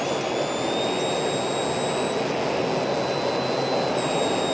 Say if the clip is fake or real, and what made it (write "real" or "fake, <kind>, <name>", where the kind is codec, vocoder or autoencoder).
real